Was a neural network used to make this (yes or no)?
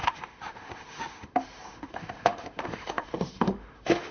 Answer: yes